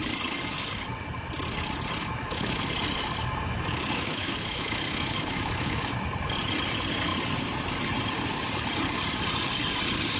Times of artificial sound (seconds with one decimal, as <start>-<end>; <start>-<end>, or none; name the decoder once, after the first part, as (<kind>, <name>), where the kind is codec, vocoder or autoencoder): 2.0-2.6 (autoencoder, DAC-VAE); 3.2-5.9